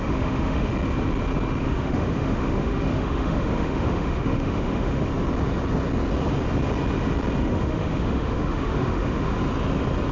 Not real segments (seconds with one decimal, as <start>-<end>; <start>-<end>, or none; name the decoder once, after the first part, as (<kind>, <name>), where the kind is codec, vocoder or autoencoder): 0.0-0.7 (autoencoder, DAC-VAE); 1.6-5.1; 7.4-9.4